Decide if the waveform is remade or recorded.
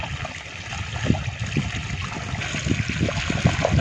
recorded